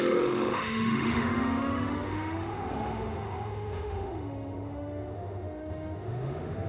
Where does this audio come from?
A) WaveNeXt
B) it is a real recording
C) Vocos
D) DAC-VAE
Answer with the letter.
D